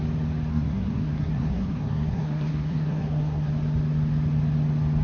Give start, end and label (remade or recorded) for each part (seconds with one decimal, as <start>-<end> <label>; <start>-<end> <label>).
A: 0.0-0.5 recorded; 0.5-3.5 remade; 3.5-5.0 recorded